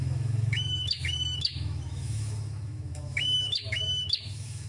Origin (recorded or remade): remade